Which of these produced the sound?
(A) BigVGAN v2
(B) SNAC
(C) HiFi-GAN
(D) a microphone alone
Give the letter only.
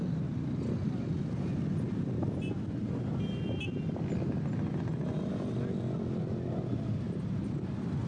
D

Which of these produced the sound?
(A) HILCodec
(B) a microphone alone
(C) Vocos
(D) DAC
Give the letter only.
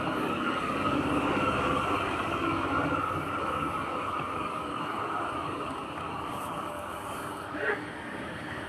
D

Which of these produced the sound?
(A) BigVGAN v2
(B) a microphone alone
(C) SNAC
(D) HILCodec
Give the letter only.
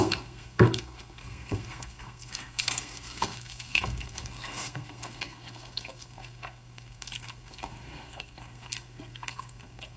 C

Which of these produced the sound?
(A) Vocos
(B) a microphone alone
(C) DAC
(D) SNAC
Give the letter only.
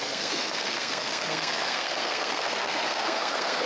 D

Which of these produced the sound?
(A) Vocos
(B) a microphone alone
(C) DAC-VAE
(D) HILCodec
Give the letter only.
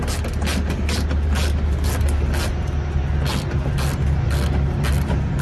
B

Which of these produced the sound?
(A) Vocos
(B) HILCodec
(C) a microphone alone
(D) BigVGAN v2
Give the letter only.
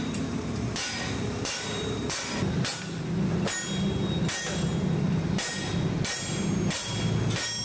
C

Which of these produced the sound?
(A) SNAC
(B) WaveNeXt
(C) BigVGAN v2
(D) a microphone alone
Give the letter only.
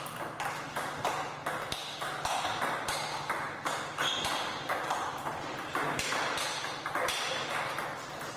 D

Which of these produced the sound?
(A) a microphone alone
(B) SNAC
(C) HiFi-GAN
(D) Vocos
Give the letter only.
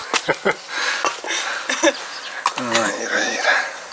A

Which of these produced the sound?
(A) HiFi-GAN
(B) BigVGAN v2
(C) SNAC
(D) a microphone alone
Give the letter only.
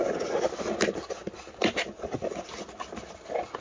D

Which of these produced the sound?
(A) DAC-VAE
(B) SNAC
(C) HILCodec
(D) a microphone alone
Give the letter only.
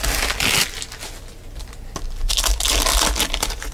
D